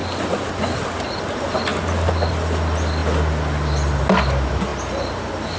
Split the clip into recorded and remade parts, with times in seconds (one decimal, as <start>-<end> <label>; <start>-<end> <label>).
0.0-5.6 recorded